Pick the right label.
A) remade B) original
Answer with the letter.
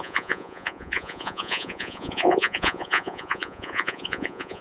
A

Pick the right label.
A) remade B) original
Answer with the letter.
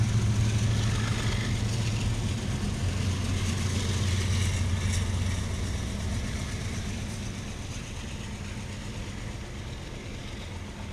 B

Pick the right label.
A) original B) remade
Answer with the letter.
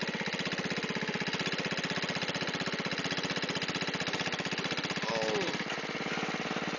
A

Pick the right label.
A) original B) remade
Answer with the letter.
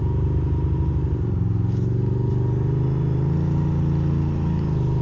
A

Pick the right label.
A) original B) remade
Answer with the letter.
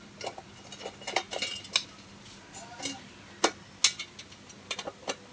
A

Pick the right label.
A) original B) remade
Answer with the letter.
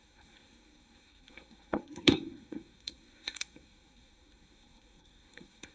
B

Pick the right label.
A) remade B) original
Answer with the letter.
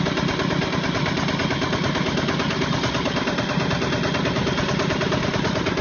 B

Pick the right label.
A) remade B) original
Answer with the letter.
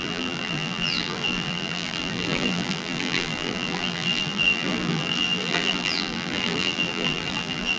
A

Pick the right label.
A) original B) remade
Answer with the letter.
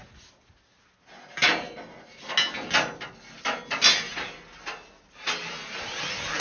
A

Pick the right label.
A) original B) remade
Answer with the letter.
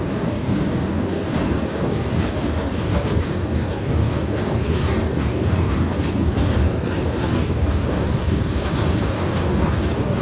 B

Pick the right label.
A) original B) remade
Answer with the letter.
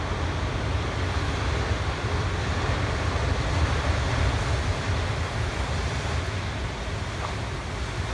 A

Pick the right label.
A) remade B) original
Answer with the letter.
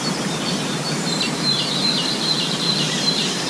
A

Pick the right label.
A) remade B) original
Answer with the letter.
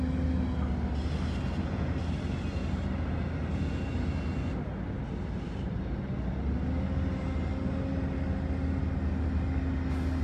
B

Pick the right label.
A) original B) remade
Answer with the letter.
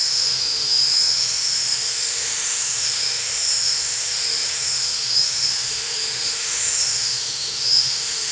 B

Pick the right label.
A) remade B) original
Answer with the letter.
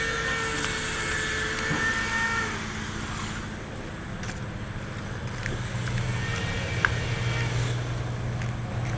B